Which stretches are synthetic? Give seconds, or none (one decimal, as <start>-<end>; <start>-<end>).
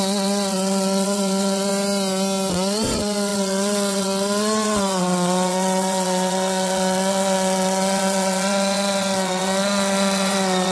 0.0-1.7; 2.5-10.7